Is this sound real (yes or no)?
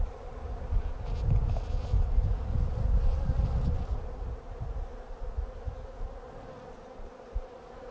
yes